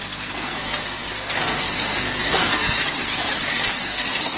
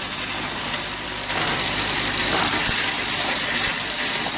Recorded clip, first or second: second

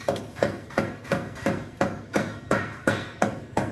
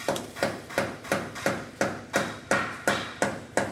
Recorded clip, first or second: second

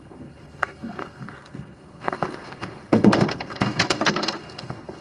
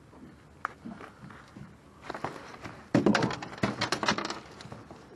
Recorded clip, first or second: second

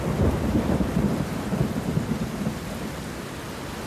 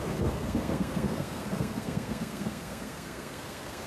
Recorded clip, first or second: first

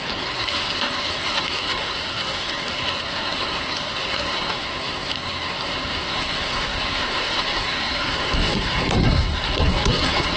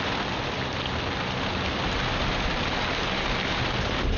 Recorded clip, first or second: second